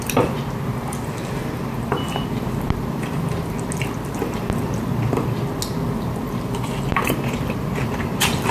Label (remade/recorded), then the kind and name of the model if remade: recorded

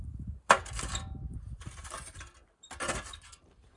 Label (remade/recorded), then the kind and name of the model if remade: recorded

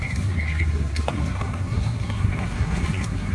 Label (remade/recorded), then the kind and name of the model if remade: remade, codec, SNAC